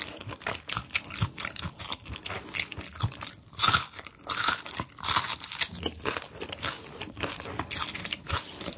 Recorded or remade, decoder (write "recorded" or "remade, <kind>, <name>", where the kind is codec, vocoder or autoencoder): recorded